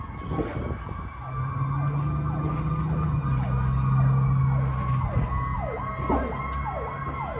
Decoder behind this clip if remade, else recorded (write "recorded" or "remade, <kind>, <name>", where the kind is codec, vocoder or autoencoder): recorded